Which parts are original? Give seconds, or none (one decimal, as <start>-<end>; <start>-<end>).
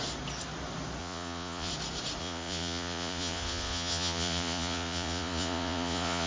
0.0-1.0; 1.7-2.2